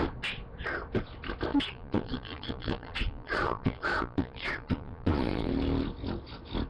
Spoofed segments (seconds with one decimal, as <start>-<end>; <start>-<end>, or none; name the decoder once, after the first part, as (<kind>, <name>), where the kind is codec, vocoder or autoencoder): 1.5-5.5 (vocoder, Vocos)